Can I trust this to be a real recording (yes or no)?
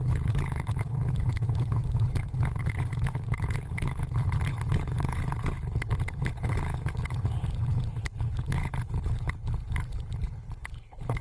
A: no